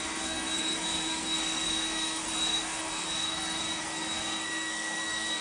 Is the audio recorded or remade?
remade